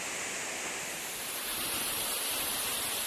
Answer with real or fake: real